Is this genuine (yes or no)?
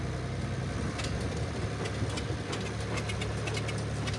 yes